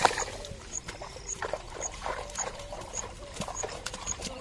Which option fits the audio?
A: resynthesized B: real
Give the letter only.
A